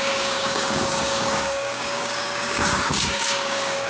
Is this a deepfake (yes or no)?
yes